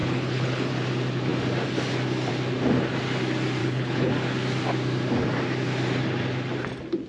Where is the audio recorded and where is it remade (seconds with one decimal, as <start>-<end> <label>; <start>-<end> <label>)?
0.0-0.7 remade; 0.7-3.6 recorded; 3.6-4.1 remade; 4.1-7.1 recorded